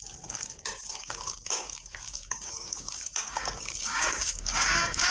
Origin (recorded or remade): remade